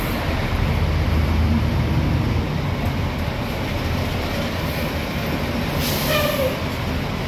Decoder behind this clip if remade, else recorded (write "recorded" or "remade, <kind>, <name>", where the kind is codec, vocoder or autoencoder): recorded